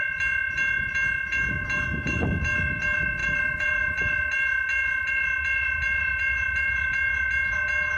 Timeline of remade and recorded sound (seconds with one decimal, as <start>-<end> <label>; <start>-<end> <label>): 0.0-3.2 recorded; 3.2-4.0 remade; 4.0-8.0 recorded